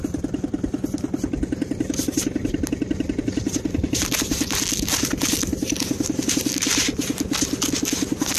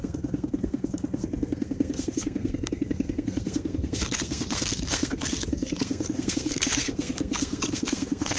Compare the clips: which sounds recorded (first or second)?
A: first